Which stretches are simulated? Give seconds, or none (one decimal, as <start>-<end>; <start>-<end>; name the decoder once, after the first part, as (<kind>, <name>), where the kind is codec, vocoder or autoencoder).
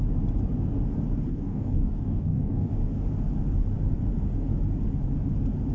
1.3-2.7 (codec, DAC)